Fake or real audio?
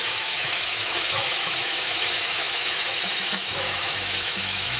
fake